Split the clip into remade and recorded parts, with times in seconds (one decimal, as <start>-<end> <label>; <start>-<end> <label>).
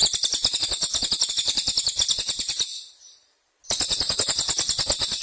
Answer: 0.0-5.2 recorded